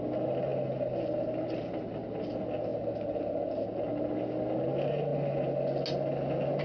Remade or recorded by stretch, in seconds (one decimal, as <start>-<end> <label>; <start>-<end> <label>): 0.0-6.6 recorded